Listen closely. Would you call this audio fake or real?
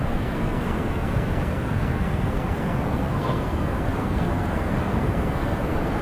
fake